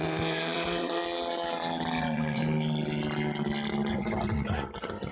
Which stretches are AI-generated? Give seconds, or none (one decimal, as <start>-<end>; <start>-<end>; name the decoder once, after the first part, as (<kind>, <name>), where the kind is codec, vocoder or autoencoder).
0.0-1.0 (vocoder, Vocos); 2.0-2.4; 3.9-5.1